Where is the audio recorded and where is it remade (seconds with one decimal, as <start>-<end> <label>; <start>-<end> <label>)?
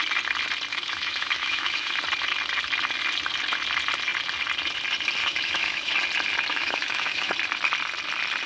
0.0-0.7 recorded; 0.7-2.0 remade; 2.0-5.2 recorded; 5.2-5.9 remade; 5.9-6.5 recorded; 6.5-7.3 remade; 7.3-8.5 recorded